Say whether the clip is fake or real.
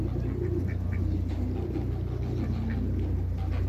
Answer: real